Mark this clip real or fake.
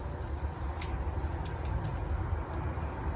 real